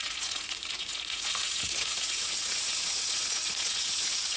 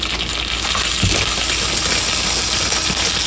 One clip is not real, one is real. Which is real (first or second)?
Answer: second